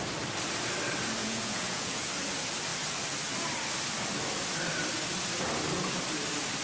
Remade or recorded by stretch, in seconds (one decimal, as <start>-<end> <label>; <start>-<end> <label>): 0.0-1.2 recorded; 1.2-2.1 remade; 2.1-6.6 recorded